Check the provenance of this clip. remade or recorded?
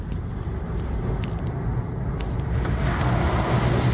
recorded